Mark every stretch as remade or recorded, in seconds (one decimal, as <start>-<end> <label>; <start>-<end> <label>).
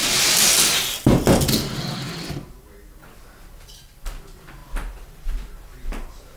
0.0-6.4 recorded